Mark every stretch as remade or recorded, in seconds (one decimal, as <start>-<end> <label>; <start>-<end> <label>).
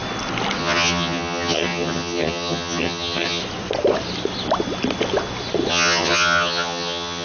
0.0-0.6 recorded; 0.6-3.4 remade; 3.4-5.7 recorded; 5.7-7.2 remade